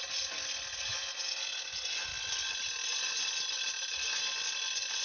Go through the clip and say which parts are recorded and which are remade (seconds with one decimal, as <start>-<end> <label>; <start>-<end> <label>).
0.0-2.1 remade; 2.1-5.0 recorded